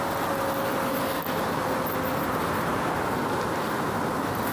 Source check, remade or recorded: recorded